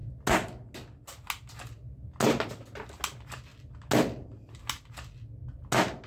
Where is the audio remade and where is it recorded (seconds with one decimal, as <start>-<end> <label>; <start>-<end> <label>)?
0.0-6.1 recorded